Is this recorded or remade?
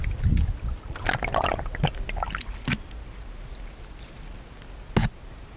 recorded